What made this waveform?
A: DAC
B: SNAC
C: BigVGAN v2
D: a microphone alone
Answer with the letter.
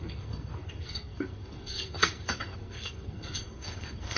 B